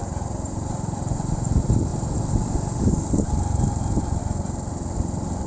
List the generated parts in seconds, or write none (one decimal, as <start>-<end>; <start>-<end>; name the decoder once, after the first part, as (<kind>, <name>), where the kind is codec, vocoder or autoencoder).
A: 0.0-1.9 (vocoder, BigVGAN v2)